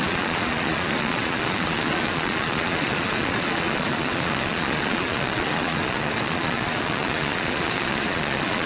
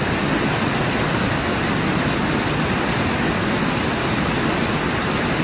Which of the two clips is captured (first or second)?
second